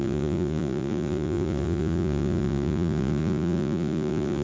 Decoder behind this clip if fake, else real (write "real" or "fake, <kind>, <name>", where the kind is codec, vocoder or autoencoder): fake, vocoder, Vocos